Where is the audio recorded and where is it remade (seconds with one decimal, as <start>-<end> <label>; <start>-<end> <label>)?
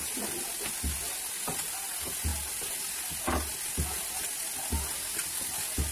0.0-5.9 recorded